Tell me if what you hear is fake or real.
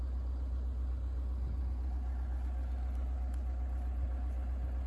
real